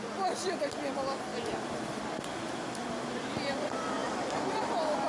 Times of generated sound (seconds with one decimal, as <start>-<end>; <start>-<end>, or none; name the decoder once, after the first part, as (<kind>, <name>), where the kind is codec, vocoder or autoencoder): none